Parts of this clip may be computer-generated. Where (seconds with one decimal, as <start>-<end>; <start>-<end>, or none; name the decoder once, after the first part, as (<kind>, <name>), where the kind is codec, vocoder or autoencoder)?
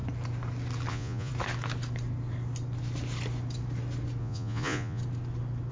0.9-1.3 (vocoder, Vocos); 4.2-5.0